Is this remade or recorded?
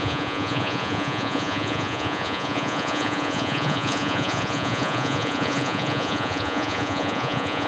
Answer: remade